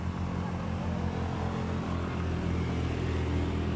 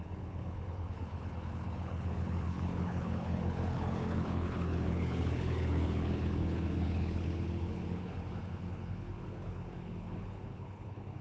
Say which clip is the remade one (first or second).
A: second